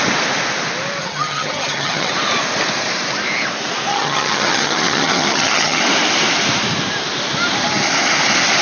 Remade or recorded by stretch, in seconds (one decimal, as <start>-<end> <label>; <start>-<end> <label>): 0.0-1.0 recorded; 1.0-2.1 remade; 2.1-3.9 recorded; 3.9-5.8 remade; 5.8-8.6 recorded